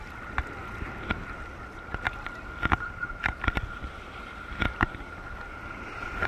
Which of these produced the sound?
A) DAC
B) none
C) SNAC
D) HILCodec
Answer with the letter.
B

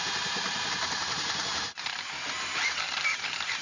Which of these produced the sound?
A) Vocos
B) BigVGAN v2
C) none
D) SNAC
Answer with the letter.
B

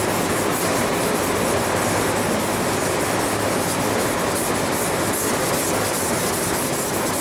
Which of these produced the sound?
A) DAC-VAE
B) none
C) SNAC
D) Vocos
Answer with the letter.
B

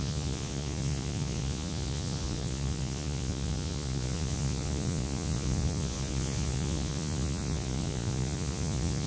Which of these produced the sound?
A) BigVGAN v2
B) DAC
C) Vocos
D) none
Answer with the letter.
C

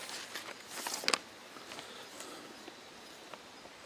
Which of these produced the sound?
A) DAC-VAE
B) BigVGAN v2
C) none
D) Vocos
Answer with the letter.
C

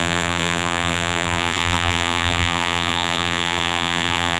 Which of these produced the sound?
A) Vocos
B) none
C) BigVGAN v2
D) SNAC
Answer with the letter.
C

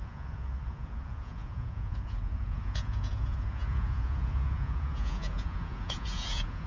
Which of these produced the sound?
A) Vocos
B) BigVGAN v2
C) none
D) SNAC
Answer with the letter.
A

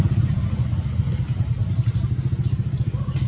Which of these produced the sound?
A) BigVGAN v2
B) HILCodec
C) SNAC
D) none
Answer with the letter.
D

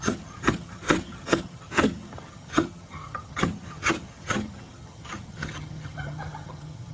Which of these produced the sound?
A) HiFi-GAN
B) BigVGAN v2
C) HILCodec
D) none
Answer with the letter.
A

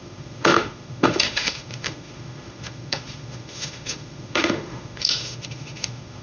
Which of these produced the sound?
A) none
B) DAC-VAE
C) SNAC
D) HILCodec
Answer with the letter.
B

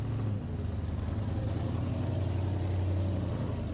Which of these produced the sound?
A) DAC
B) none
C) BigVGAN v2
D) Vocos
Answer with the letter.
B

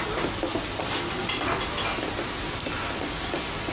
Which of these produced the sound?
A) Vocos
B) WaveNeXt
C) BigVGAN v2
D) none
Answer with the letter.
D